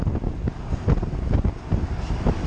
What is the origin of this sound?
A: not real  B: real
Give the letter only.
B